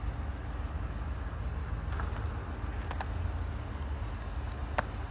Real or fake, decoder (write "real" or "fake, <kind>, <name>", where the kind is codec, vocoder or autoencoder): real